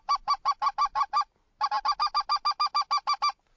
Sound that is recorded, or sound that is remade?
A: recorded